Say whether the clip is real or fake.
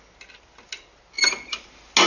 real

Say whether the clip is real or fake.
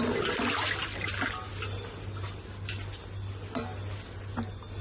real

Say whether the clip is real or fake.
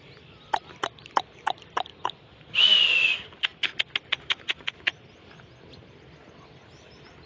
real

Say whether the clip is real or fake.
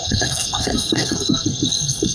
fake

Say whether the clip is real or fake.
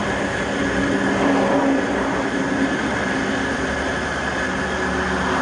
real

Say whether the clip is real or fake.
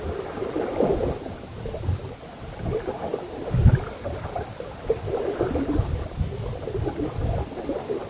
real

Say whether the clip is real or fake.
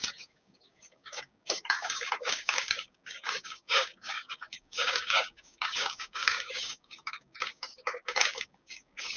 fake